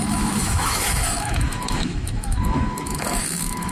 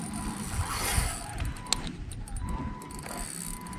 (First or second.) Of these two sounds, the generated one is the first